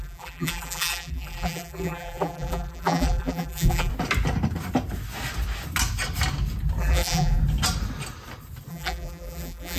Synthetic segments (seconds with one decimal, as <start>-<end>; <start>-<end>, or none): 0.0-3.9; 6.8-7.4; 8.7-9.8